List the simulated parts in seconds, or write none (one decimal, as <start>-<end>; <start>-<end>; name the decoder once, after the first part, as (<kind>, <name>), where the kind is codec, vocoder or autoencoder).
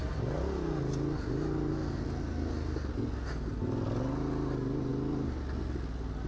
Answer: none